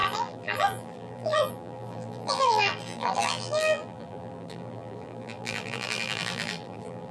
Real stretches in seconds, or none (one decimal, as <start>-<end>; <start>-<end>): none